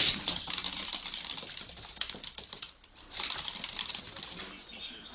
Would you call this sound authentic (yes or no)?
no